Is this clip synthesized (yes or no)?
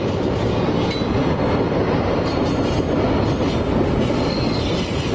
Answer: no